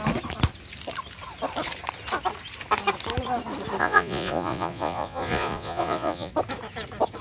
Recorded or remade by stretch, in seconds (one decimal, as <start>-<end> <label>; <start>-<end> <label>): 0.0-3.8 recorded; 3.8-6.3 remade; 6.3-7.2 recorded